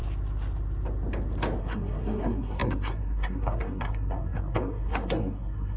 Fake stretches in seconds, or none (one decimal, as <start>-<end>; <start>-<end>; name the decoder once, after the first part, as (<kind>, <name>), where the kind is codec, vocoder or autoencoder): 1.6-5.8 (codec, SNAC)

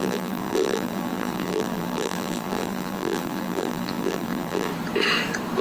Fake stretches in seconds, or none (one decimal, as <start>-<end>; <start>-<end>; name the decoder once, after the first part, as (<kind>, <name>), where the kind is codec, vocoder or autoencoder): 0.0-4.7 (vocoder, BigVGAN v2)

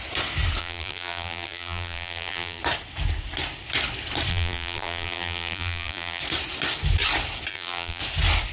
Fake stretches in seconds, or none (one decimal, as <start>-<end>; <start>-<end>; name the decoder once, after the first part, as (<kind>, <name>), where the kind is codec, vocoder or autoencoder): 0.6-2.6 (vocoder, BigVGAN v2); 4.3-6.2; 7.5-8.0

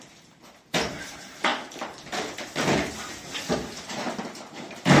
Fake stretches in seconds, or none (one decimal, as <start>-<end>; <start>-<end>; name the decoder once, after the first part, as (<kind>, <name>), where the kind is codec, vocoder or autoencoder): 0.0-1.5 (vocoder, BigVGAN v2); 3.4-5.0

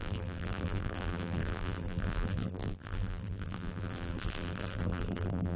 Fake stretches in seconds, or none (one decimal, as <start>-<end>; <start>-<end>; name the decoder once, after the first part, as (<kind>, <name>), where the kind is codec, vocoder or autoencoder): 0.0-5.6 (vocoder, BigVGAN v2)

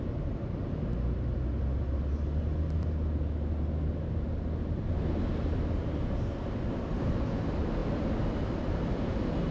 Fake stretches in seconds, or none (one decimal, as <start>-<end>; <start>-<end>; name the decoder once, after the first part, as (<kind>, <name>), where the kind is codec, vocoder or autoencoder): none

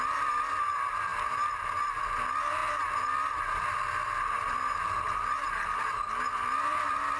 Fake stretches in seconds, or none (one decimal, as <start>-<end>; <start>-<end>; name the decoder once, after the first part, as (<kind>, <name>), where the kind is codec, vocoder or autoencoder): none